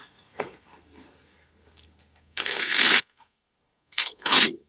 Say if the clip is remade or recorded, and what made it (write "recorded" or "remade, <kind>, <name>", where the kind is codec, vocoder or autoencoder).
remade, codec, SNAC